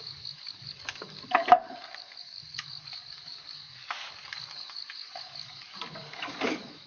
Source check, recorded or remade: remade